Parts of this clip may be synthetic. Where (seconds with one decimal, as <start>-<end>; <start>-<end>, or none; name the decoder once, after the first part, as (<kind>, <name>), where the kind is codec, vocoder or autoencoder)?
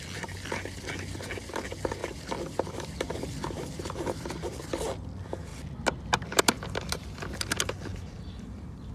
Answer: 3.1-4.3 (vocoder, BigVGAN v2); 7.9-8.9